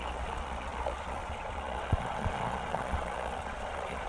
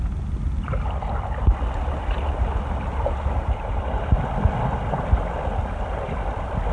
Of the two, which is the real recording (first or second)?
second